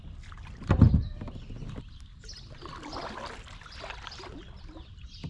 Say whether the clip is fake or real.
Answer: real